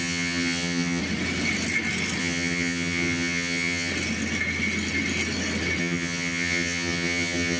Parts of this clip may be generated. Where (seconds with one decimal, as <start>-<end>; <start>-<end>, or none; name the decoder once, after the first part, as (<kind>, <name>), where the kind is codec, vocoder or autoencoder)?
0.0-1.0 (vocoder, HiFi-GAN); 2.2-3.9; 5.8-7.6